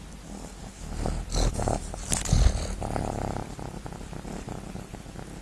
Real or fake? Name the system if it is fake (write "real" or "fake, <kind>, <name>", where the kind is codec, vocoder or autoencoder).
real